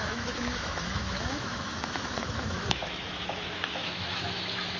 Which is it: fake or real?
fake